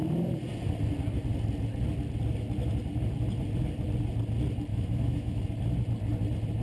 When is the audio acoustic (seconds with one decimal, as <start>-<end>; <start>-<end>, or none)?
0.0-4.7; 5.4-6.6